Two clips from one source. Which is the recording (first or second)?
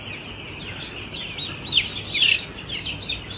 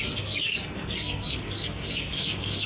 first